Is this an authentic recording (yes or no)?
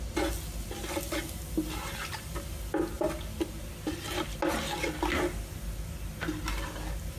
yes